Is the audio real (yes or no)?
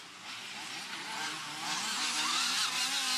yes